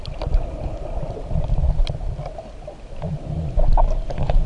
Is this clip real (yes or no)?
yes